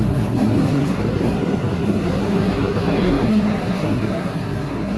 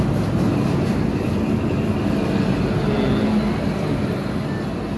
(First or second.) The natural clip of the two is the second